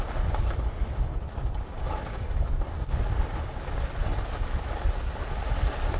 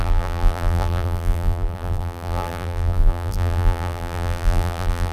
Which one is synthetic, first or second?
second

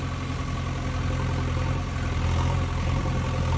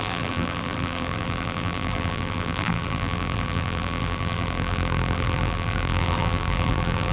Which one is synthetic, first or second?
second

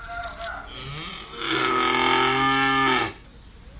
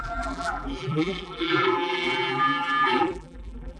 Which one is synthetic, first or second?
second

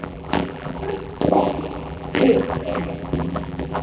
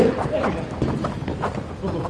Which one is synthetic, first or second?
first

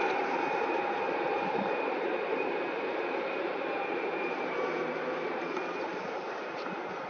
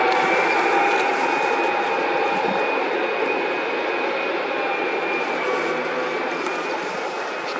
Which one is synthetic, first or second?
first